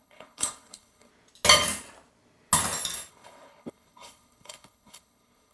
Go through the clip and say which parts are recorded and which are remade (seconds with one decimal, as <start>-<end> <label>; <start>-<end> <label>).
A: 0.0-1.1 remade; 1.1-3.1 recorded; 3.1-5.5 remade